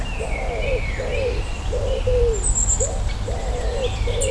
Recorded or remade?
remade